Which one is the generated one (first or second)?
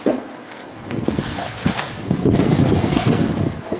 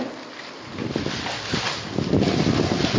first